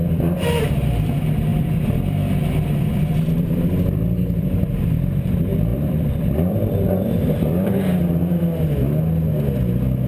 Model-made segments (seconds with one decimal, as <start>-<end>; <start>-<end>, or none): 0.0-7.9